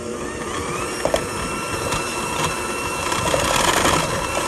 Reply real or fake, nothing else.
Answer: fake